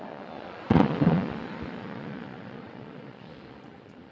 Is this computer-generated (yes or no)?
yes